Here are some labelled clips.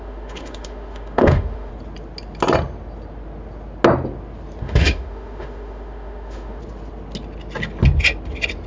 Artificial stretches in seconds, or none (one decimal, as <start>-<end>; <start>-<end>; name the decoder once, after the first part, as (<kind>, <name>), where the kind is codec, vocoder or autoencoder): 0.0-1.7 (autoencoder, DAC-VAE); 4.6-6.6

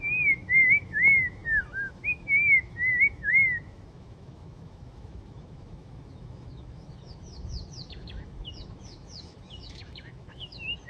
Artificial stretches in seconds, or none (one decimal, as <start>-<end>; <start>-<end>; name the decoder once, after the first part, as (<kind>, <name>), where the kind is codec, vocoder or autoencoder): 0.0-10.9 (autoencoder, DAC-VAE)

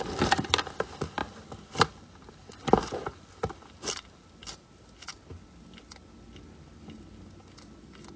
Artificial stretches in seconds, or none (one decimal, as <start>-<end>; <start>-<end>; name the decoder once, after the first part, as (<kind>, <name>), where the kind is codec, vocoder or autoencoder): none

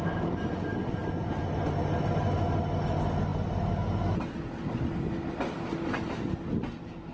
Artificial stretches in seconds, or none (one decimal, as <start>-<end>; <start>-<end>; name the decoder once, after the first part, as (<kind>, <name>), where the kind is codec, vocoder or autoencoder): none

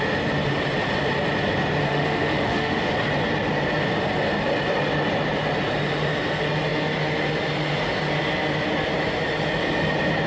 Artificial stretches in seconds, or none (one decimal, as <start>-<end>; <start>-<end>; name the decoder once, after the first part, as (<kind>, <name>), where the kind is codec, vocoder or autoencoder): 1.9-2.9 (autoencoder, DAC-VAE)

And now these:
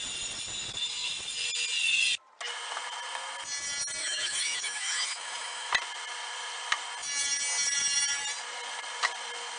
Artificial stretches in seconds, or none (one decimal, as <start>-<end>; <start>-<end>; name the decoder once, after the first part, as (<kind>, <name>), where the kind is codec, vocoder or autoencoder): 4.0-5.7 (autoencoder, DAC-VAE)

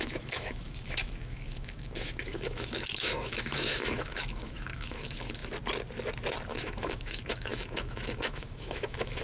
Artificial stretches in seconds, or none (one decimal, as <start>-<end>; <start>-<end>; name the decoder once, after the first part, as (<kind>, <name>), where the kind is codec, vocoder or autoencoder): 0.0-5.4 (autoencoder, DAC-VAE); 6.5-9.2